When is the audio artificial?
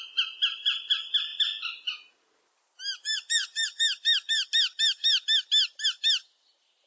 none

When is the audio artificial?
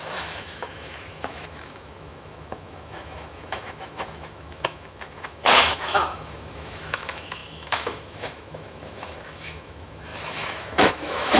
0.0-11.4 (autoencoder, DAC-VAE)